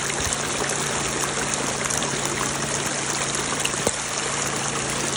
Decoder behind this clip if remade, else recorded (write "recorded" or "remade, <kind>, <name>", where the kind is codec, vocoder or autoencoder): recorded